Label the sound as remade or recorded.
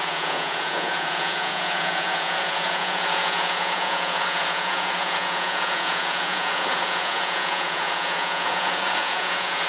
remade